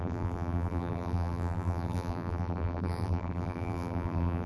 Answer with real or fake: fake